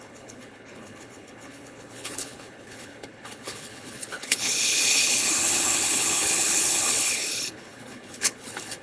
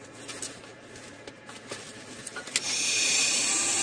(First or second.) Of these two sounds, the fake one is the first